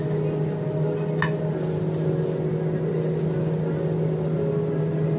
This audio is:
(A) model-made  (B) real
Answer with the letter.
B